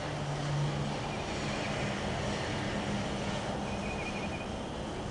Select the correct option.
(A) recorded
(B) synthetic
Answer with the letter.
A